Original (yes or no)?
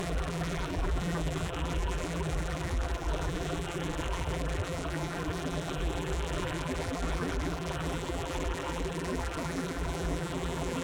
no